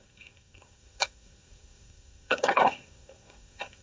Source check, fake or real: fake